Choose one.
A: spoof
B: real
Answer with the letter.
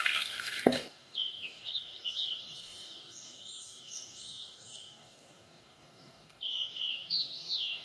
A